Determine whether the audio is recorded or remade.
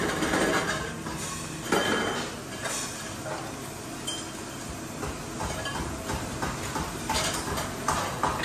recorded